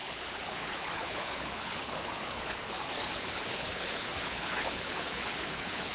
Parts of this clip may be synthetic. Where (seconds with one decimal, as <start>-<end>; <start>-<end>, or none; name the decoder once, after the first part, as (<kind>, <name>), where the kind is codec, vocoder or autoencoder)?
0.0-5.9 (codec, HILCodec)